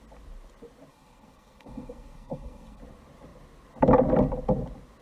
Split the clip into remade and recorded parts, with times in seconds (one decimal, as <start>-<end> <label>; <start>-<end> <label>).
0.0-0.9 recorded; 0.9-2.8 remade; 2.8-5.0 recorded